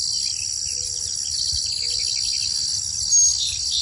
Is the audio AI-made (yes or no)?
no